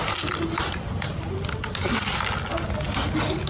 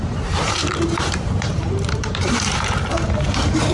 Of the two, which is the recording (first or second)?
first